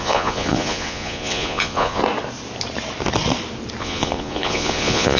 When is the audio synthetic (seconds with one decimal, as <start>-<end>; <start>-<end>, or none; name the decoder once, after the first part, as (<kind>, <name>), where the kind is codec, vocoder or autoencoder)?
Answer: 0.0-2.0 (vocoder, Vocos); 3.8-5.2